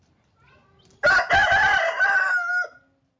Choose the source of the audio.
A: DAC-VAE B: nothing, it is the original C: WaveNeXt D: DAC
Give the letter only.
B